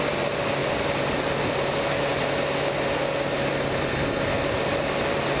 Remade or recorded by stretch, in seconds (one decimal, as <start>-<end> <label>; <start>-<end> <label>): 0.0-5.4 recorded